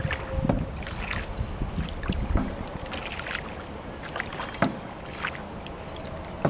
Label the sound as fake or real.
real